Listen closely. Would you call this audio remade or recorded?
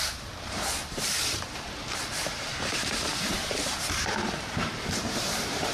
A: remade